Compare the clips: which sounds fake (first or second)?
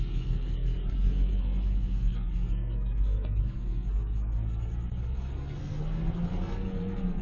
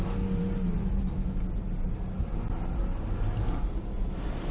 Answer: first